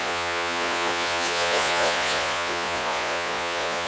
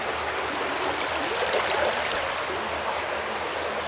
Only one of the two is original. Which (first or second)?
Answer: second